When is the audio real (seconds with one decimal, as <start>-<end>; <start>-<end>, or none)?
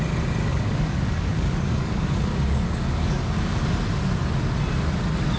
0.0-0.5; 3.7-5.4